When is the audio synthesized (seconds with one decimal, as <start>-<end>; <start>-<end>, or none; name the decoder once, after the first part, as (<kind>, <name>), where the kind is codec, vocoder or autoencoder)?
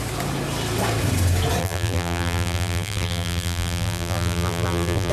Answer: 1.6-5.1 (vocoder, BigVGAN v2)